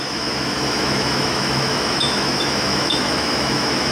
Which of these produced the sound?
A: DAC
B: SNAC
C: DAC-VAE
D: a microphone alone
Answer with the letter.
C